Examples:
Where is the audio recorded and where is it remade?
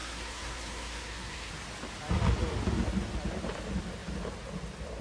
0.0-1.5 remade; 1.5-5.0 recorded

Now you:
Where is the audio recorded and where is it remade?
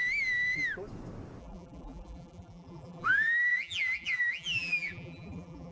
0.0-1.4 recorded; 1.4-5.7 remade